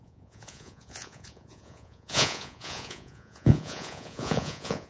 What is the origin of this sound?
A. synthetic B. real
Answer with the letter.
A